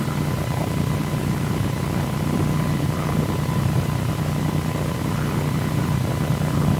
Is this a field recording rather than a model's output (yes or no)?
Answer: no